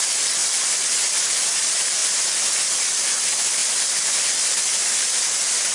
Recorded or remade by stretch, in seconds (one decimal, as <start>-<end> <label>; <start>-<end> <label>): 0.0-3.6 recorded; 3.6-4.1 remade; 4.1-5.7 recorded